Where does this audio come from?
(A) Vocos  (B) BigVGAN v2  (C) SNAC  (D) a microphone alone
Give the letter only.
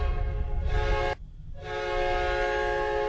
D